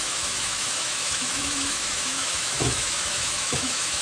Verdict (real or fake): fake